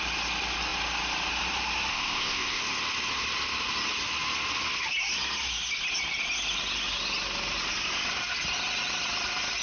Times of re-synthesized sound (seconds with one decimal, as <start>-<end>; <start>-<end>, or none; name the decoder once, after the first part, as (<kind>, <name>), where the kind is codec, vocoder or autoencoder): 1.9-2.6 (codec, ZipCodec)